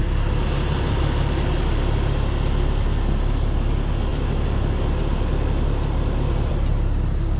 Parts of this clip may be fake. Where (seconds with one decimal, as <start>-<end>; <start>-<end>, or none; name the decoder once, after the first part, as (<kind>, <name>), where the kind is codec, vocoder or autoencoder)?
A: none